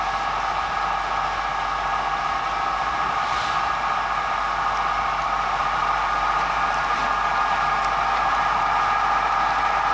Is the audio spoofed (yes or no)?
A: no